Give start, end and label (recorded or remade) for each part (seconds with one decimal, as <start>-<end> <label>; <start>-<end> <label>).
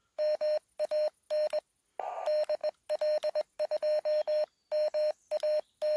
0.0-6.0 recorded